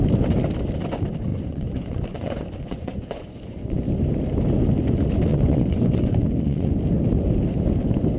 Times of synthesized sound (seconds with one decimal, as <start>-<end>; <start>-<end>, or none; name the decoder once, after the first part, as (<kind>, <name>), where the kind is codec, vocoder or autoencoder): 1.3-3.8 (vocoder, Vocos); 5.3-6.7